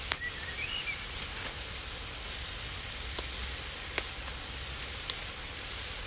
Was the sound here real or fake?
real